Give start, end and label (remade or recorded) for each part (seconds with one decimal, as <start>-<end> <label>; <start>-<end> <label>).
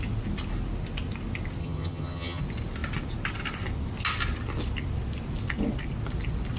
0.0-1.6 recorded; 1.6-2.4 remade; 2.4-6.6 recorded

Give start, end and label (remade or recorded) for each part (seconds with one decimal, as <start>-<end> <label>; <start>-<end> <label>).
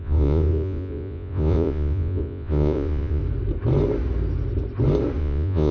0.0-3.2 remade; 3.2-5.2 recorded; 5.2-5.7 remade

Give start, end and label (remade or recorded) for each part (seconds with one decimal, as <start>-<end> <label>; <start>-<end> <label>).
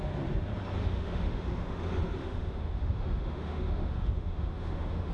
0.0-0.8 recorded; 0.8-1.8 remade; 1.8-2.2 recorded; 2.2-5.1 remade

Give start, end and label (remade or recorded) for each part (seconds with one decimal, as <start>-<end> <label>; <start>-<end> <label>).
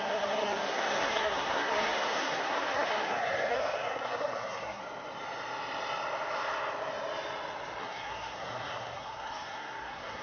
0.0-4.8 remade; 4.8-7.8 recorded; 7.8-10.2 remade